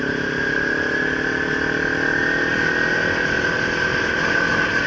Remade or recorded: recorded